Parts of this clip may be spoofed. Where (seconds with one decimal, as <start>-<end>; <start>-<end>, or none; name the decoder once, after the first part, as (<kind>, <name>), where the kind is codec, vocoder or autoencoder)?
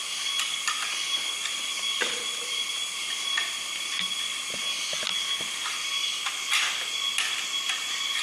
none